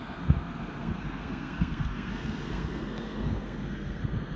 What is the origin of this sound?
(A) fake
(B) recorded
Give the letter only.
A